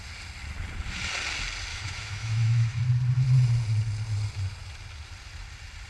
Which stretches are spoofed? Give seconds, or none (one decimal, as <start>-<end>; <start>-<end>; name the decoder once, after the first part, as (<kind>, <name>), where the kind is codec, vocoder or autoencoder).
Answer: 1.7-2.8 (autoencoder, DAC-VAE)